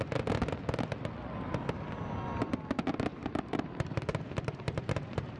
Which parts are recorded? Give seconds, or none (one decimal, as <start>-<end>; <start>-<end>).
0.0-3.1